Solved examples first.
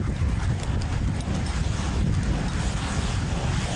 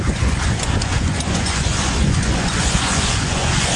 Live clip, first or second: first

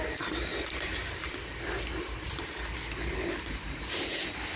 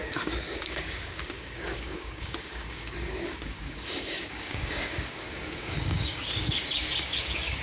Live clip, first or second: first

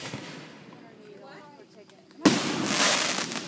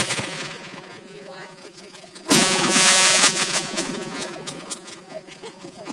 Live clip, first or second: first